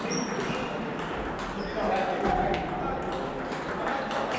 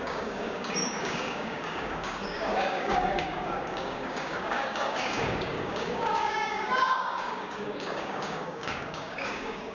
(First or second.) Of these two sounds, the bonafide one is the first